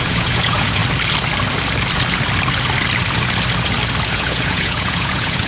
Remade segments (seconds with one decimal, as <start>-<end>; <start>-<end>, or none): 0.0-0.8; 4.1-5.5